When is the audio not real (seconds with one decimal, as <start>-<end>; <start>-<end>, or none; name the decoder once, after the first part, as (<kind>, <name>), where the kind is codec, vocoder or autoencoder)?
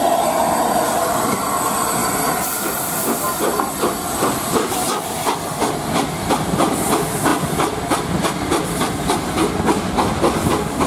none